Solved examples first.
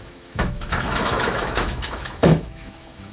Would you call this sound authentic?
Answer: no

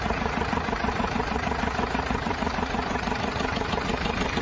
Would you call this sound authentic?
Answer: no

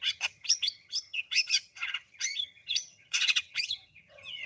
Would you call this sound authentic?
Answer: no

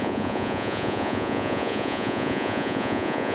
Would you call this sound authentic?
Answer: no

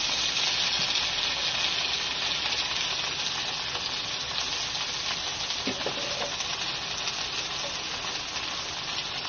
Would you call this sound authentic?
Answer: yes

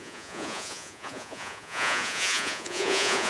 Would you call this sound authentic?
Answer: no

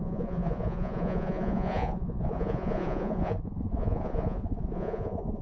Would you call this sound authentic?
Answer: no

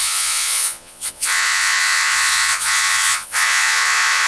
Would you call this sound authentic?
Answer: no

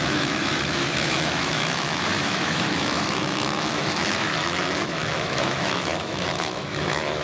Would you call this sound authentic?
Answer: no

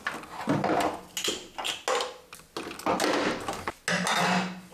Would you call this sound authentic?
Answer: yes